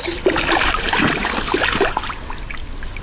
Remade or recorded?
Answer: recorded